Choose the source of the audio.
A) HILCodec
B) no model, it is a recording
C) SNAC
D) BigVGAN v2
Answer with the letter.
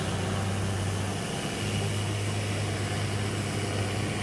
B